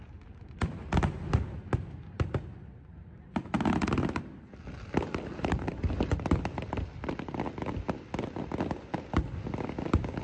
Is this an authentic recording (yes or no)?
yes